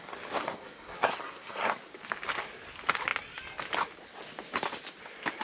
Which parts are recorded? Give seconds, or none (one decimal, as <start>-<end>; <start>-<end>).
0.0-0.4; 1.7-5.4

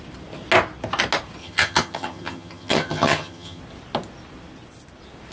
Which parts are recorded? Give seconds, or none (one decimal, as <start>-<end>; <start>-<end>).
0.0-1.4; 3.6-5.3

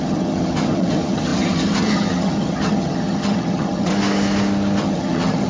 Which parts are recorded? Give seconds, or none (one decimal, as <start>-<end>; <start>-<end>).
3.9-4.8

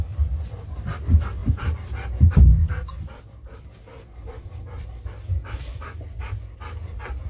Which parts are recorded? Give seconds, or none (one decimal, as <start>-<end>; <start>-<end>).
0.0-1.4; 5.8-7.3

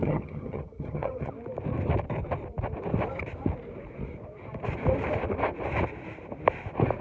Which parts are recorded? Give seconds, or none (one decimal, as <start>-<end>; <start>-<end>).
1.3-7.0